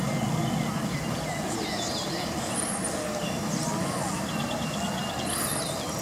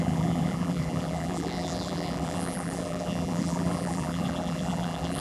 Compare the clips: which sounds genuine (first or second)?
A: first